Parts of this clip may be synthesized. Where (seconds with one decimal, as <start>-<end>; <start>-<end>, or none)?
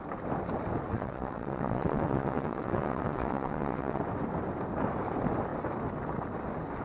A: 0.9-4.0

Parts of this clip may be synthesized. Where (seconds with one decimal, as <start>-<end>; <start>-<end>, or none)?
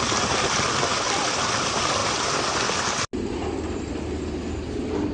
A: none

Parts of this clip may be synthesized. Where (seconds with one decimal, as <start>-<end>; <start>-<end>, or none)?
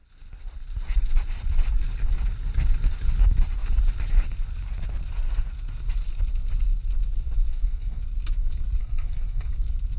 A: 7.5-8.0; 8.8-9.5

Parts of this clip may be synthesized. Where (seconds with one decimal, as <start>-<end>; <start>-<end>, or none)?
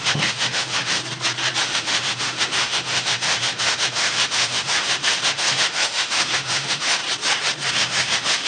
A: 0.0-1.0; 1.6-7.0; 7.7-8.5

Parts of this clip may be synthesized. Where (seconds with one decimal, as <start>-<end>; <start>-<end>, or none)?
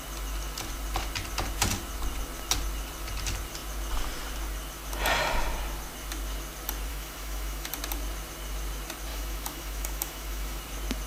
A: 6.9-7.7; 9.1-10.6